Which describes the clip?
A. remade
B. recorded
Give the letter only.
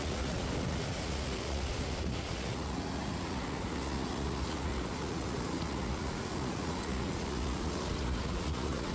A